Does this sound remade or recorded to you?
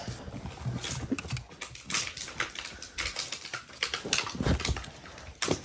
recorded